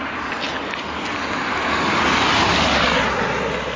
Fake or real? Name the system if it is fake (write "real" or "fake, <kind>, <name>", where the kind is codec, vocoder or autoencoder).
real